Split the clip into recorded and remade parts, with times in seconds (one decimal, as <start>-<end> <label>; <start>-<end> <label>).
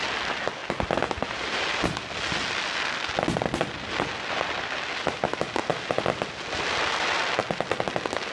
0.0-8.3 recorded